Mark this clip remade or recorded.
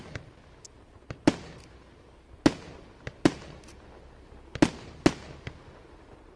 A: recorded